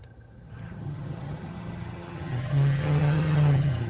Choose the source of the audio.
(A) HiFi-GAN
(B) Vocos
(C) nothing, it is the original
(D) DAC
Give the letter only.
A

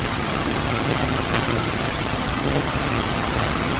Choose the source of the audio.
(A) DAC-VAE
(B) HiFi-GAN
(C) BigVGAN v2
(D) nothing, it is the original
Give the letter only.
B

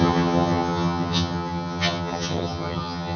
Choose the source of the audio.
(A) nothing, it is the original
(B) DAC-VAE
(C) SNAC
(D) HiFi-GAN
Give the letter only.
D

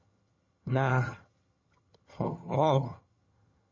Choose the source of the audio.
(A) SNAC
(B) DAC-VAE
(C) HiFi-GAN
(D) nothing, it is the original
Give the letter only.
C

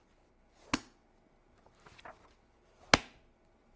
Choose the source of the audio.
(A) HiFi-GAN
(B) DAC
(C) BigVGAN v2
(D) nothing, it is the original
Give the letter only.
D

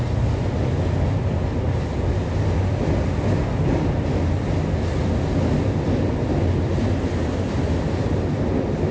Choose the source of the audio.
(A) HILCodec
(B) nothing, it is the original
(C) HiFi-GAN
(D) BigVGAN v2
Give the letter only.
B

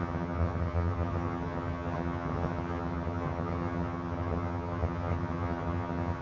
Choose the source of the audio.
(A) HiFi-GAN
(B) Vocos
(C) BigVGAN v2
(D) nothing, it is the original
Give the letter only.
A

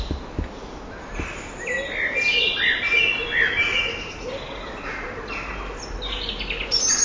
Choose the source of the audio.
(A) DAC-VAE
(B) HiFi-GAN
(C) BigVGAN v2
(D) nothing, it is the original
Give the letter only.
D